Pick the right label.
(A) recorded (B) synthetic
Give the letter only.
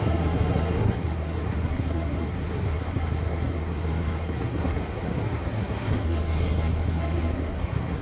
B